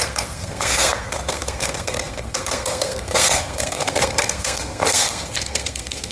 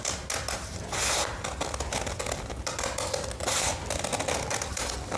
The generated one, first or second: first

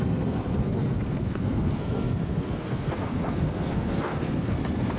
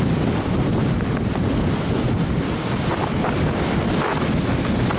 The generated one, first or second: first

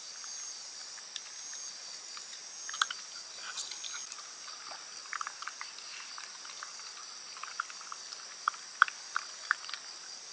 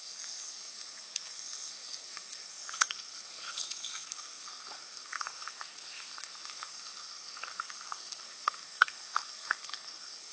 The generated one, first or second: second